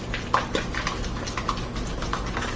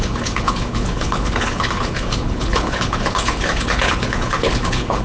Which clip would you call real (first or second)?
first